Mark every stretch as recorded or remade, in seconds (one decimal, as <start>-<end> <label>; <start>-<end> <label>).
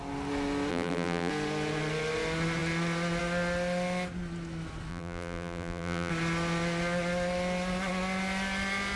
0.0-0.7 recorded; 0.7-1.3 remade; 1.3-4.9 recorded; 4.9-6.1 remade; 6.1-9.0 recorded